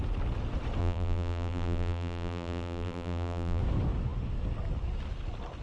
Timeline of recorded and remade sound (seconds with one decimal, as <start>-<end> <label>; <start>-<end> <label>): 0.0-0.8 recorded; 0.8-3.6 remade; 3.6-5.6 recorded